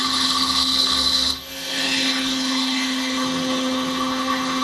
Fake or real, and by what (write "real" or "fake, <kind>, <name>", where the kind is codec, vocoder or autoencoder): fake, codec, HILCodec